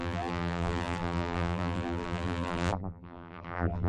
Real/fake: fake